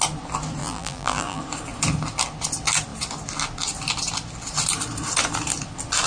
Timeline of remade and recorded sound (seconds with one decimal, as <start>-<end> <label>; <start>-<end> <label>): 0.0-0.6 recorded; 0.6-1.4 remade; 1.4-6.1 recorded